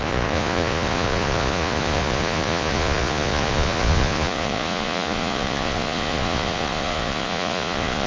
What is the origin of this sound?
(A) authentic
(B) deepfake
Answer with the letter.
B